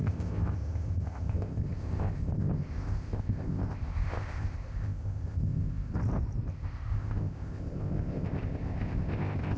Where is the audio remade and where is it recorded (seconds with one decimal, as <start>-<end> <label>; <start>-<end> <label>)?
0.0-5.9 remade; 5.9-6.5 recorded; 6.5-9.6 remade